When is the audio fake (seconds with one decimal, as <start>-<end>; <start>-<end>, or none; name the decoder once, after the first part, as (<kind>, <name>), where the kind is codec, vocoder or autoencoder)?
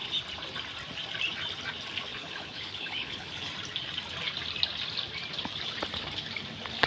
2.1-3.5 (codec, HILCodec)